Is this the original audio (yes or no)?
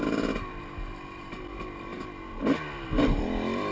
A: yes